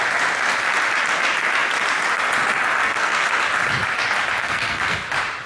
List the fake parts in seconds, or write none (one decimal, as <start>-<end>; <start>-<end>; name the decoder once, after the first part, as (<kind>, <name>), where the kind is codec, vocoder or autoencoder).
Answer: 2.8-3.3 (codec, SNAC); 4.4-5.1